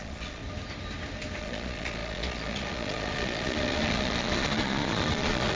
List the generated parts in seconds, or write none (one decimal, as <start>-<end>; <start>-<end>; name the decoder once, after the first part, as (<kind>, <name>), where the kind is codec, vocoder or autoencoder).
0.0-0.4 (vocoder, Vocos); 1.4-5.5